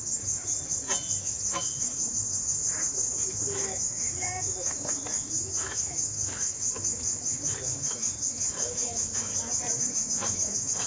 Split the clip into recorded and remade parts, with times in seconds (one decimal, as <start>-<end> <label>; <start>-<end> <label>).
0.0-0.5 remade; 0.5-1.2 recorded; 1.2-9.3 remade; 9.3-9.8 recorded; 9.8-10.9 remade